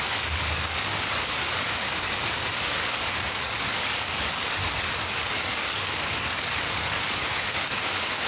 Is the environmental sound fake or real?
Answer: fake